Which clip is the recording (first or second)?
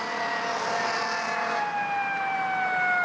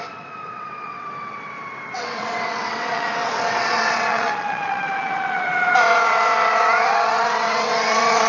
first